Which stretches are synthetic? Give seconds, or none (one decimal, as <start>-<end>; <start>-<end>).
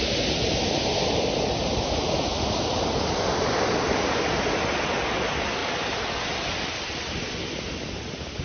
none